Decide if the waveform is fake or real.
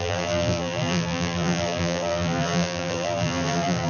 fake